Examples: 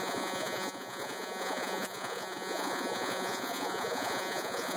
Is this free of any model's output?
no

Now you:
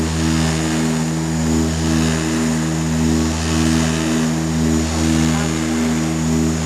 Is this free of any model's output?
yes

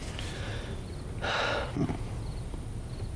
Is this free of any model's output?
yes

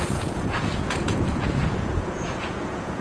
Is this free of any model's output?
no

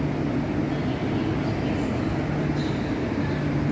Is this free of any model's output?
yes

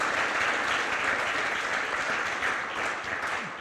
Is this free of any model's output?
yes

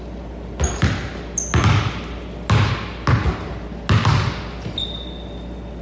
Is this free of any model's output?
yes